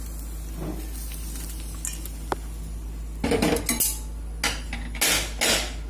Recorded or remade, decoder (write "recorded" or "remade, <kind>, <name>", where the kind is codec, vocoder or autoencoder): recorded